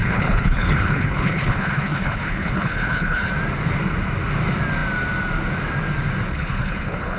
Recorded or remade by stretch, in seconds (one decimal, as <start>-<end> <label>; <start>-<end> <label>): 0.0-3.3 remade; 3.3-6.3 recorded; 6.3-7.2 remade